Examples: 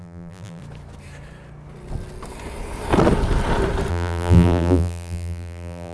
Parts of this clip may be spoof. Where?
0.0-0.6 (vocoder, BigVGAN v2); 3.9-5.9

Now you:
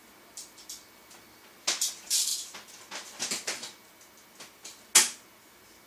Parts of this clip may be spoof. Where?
1.9-2.3 (vocoder, BigVGAN v2)

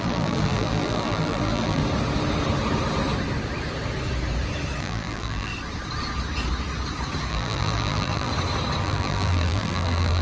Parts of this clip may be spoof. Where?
0.0-1.8 (vocoder, BigVGAN v2); 4.8-5.5; 7.3-8.3; 8.8-10.2